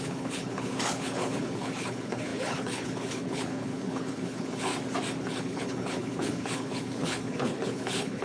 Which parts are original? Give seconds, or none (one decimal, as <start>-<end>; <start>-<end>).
4.7-5.2